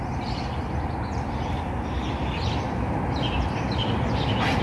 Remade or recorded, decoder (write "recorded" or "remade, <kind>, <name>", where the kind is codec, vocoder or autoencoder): recorded